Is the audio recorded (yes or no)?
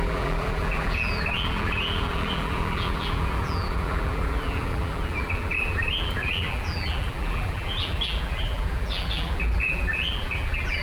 no